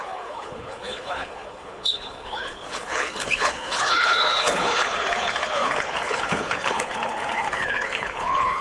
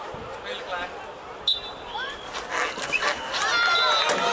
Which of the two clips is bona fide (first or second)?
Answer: second